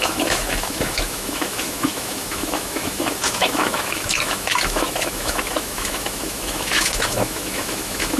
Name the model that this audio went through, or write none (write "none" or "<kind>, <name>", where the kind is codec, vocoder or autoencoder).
autoencoder, DAC-VAE